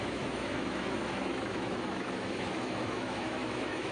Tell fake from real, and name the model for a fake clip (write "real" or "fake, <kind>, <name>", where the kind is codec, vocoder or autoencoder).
fake, autoencoder, DAC-VAE